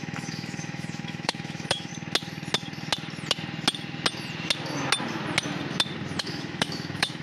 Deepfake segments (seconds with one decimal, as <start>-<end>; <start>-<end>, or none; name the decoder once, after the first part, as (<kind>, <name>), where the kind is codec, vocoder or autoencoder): 0.0-1.9 (autoencoder, DAC-VAE); 6.2-7.2